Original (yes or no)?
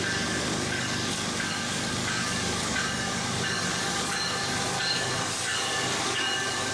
no